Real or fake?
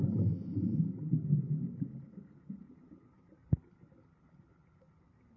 real